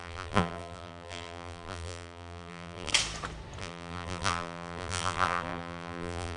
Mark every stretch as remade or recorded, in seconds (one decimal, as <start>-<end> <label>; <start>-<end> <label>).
0.0-2.9 remade; 2.9-3.6 recorded; 3.6-6.4 remade